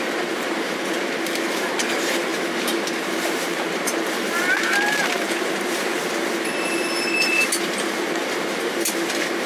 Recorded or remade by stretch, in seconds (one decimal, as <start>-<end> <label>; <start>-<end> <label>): 0.0-2.3 remade; 2.3-3.0 recorded; 3.0-9.5 remade

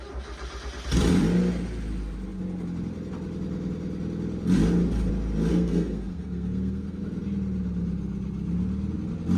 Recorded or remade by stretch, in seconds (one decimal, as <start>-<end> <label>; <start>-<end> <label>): 0.0-5.5 recorded; 5.5-7.0 remade; 7.0-9.4 recorded